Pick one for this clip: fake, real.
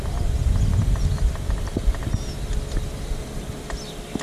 real